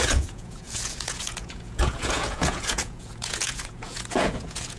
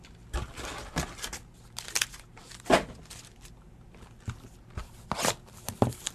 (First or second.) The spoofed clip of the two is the first